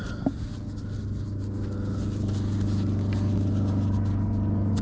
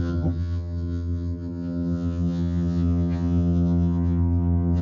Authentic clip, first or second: first